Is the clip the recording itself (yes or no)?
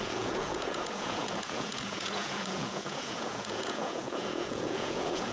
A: no